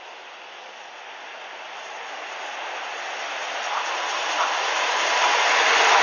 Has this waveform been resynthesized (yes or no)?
no